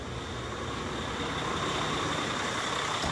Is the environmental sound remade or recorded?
recorded